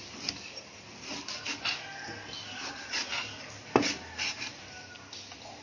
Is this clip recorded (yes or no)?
yes